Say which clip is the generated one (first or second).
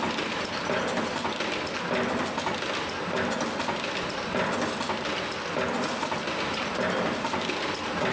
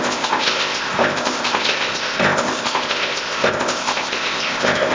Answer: second